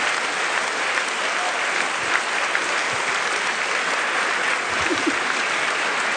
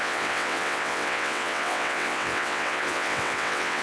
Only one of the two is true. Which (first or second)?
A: first